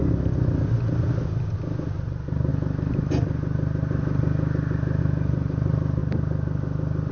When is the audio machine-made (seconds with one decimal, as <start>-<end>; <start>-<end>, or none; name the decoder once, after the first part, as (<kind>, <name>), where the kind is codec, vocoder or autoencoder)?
none